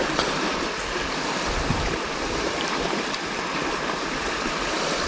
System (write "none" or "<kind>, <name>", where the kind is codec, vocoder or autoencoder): vocoder, BigVGAN v2